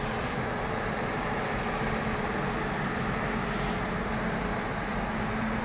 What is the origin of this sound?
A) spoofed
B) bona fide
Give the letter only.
B